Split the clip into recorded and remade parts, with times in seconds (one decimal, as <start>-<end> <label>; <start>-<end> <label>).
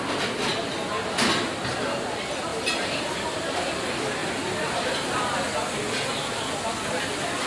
0.0-7.5 recorded